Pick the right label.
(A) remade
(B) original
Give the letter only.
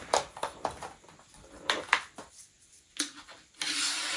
A